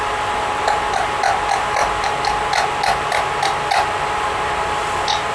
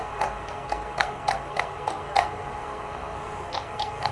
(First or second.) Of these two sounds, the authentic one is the first